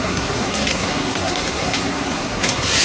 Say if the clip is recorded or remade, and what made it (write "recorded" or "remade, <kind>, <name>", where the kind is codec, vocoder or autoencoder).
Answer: remade, codec, SNAC